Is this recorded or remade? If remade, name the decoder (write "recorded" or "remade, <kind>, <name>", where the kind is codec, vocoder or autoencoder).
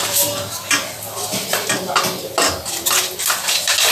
recorded